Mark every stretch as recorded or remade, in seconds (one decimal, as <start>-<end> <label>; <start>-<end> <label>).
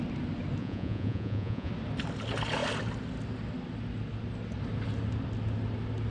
0.0-0.6 recorded; 0.6-1.7 remade; 1.7-6.1 recorded